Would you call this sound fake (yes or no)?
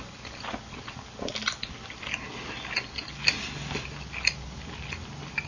no